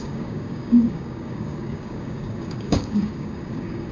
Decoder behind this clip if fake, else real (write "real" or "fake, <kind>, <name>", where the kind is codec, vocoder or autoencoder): fake, codec, DAC